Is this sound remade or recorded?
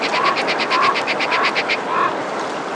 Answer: recorded